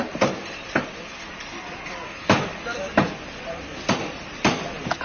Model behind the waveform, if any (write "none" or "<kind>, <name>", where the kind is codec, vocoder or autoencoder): vocoder, BigVGAN v2